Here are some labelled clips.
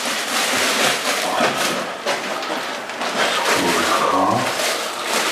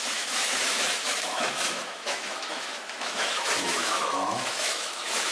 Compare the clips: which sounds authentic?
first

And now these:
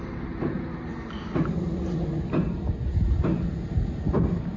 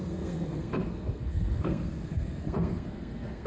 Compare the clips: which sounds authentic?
first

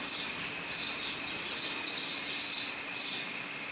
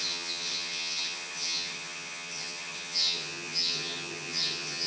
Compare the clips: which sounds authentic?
first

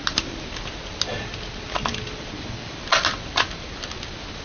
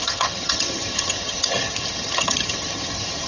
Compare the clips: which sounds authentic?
first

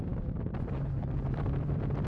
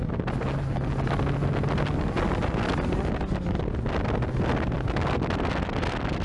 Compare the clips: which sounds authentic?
second